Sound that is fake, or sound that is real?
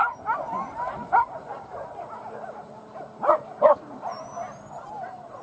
real